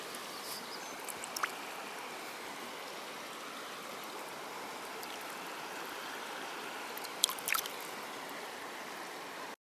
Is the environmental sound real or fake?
real